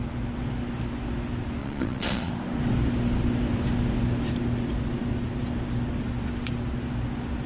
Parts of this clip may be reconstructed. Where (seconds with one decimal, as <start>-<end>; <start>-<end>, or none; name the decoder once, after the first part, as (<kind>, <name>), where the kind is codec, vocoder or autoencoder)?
1.6-2.3 (vocoder, Vocos)